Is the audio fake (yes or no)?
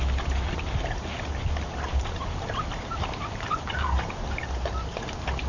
no